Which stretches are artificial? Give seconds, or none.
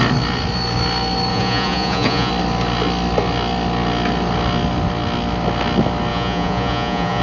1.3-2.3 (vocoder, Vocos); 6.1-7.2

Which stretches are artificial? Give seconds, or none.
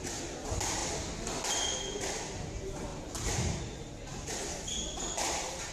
2.9-3.6 (vocoder, BigVGAN v2); 4.1-4.7